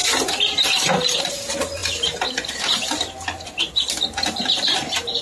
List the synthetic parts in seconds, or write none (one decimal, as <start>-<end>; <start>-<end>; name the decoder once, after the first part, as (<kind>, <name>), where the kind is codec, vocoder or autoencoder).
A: none